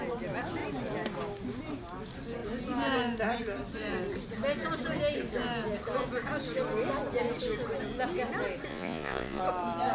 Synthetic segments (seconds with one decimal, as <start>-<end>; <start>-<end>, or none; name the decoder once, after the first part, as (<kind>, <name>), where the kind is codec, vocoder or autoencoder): 8.7-9.4 (vocoder, Vocos)